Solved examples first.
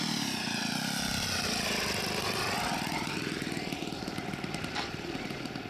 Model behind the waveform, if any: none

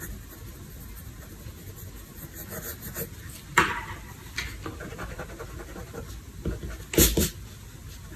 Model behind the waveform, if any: none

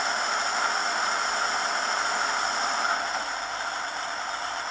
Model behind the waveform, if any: none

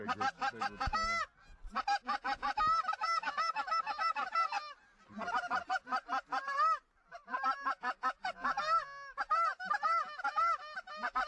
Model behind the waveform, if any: none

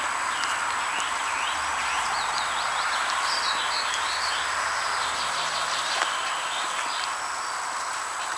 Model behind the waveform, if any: none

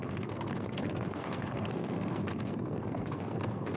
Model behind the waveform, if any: codec, SNAC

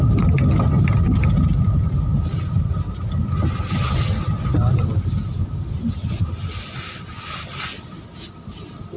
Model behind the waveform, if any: none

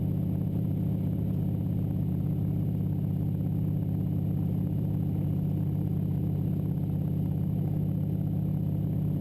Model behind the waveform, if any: none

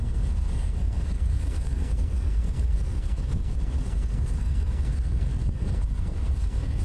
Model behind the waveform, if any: codec, SNAC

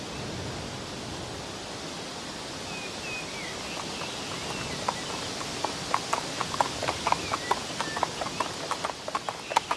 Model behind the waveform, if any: none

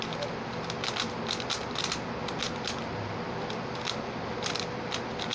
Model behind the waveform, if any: none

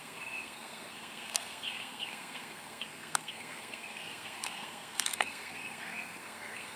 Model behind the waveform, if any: codec, SNAC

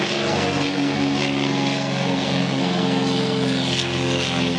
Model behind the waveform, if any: codec, SNAC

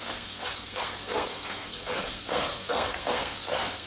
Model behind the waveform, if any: codec, SNAC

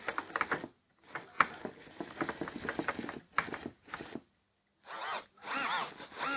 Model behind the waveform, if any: none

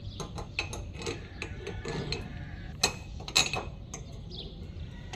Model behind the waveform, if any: none